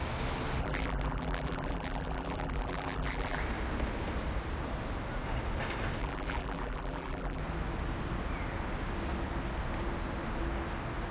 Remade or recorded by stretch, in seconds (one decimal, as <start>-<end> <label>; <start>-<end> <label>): 0.0-0.6 recorded; 0.6-3.4 remade; 3.4-6.0 recorded; 6.0-7.4 remade; 7.4-11.1 recorded